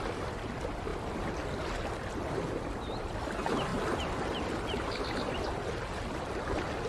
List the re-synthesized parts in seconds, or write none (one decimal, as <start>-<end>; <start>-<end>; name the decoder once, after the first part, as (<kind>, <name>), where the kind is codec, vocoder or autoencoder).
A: none